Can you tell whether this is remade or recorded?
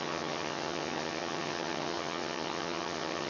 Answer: remade